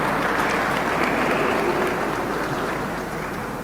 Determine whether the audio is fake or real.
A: real